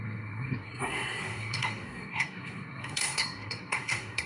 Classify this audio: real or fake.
fake